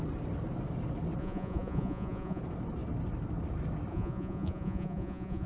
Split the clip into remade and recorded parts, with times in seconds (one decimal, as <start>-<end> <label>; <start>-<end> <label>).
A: 0.0-1.2 recorded; 1.2-2.4 remade; 2.4-3.9 recorded; 3.9-5.5 remade